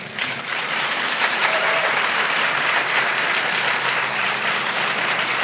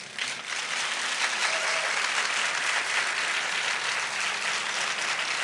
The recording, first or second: second